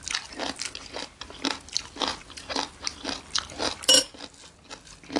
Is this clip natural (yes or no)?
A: yes